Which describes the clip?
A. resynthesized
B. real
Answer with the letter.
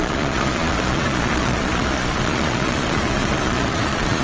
A